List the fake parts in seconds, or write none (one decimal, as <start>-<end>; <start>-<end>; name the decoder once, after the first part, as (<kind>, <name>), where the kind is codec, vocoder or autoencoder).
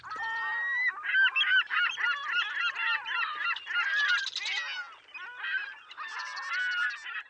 none